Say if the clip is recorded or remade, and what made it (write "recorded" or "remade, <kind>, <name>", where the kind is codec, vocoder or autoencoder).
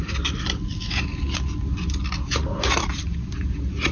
recorded